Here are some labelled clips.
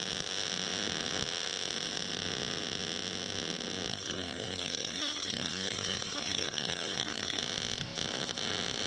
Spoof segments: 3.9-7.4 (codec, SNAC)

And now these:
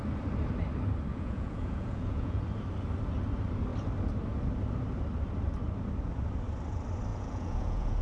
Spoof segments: 1.1-2.4 (vocoder, Vocos); 7.1-8.0